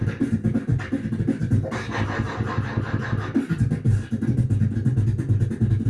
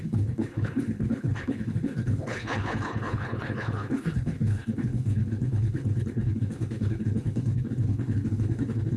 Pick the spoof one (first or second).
second